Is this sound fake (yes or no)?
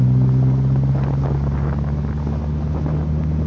no